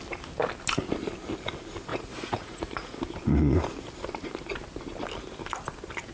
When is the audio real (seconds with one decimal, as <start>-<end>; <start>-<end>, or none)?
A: 0.0-1.9; 3.0-6.1